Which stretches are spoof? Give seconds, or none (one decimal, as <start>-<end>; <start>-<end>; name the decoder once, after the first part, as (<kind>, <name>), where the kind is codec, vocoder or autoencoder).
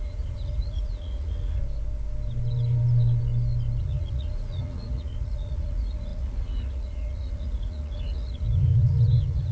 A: 0.0-1.6 (vocoder, Vocos); 3.8-9.5